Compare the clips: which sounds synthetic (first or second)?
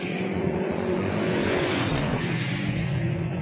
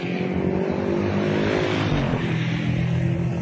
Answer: first